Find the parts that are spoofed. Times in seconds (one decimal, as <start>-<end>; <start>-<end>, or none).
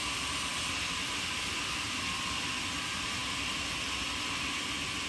none